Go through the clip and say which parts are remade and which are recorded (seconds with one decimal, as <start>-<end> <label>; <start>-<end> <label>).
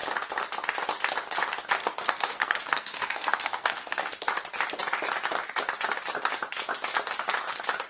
0.0-1.8 recorded; 1.8-4.1 remade; 4.1-7.9 recorded